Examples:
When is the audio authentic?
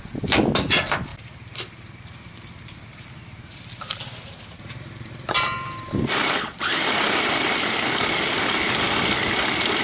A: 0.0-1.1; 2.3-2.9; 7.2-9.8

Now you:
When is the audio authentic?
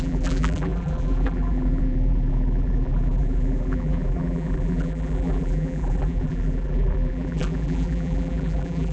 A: none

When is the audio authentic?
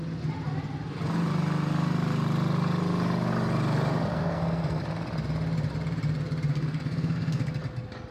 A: 0.0-4.1; 4.8-6.5; 7.5-8.1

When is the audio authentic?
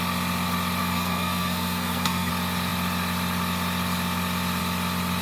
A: 0.0-0.8; 2.3-5.2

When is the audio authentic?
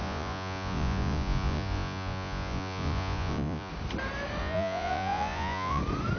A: 3.7-4.4; 5.8-6.2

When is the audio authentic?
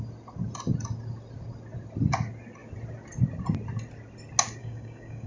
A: 0.0-4.6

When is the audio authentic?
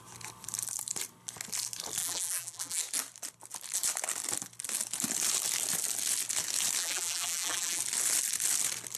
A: 0.0-2.0; 2.8-6.8; 7.8-9.0